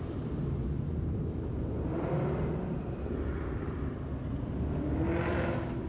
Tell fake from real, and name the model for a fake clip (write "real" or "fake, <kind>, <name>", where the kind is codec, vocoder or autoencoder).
real